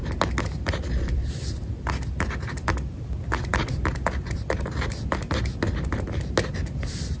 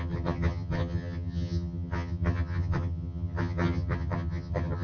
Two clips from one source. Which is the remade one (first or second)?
second